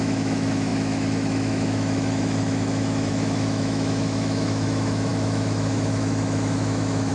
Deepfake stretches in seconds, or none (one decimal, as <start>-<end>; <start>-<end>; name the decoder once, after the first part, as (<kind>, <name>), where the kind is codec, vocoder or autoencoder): 0.0-7.1 (autoencoder, DAC-VAE)